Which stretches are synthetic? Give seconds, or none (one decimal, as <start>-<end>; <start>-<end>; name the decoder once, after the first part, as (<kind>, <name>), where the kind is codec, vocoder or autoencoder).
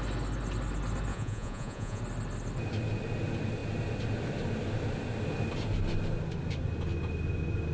1.1-2.0 (vocoder, Vocos)